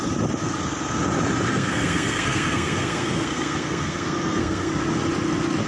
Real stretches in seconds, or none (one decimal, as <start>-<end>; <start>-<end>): 0.0-1.5; 4.7-5.7